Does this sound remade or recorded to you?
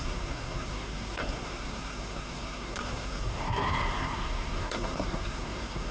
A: remade